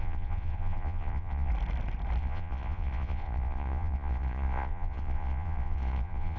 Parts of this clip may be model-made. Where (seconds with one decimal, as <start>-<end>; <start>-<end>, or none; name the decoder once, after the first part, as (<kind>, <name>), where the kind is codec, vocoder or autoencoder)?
0.0-1.5 (vocoder, Vocos); 2.2-6.4